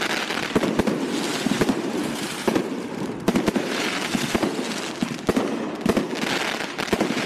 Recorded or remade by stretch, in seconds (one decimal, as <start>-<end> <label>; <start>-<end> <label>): 0.0-1.3 recorded; 1.3-3.8 remade; 3.8-7.3 recorded